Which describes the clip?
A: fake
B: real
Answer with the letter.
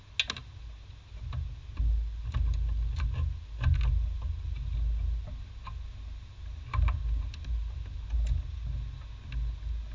B